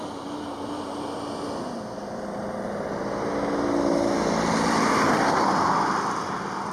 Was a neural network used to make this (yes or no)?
no